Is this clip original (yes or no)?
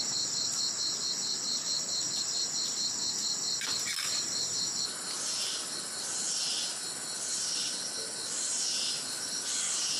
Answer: yes